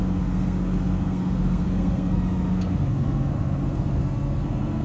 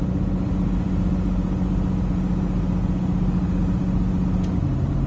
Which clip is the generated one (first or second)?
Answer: first